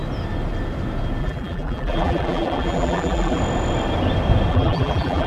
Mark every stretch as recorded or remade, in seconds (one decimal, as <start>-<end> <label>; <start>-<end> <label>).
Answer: 0.0-1.2 recorded; 1.2-3.4 remade; 3.4-4.5 recorded; 4.5-5.3 remade